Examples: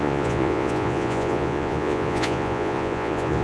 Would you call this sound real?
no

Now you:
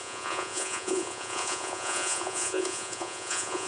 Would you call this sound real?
no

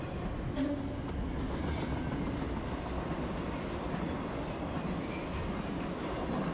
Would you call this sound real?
yes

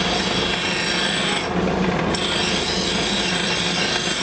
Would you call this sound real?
yes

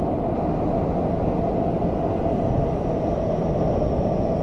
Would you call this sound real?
yes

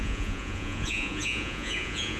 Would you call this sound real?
no